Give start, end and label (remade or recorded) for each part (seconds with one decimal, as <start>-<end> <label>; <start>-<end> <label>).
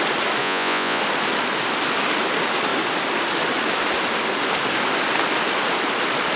0.0-0.4 recorded; 0.4-1.0 remade; 1.0-6.4 recorded